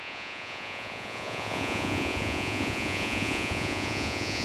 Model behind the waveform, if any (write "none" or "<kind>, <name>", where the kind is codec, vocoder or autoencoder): vocoder, Vocos